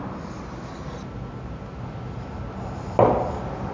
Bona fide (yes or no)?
yes